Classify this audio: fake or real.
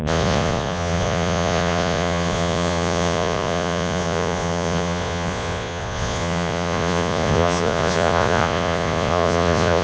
fake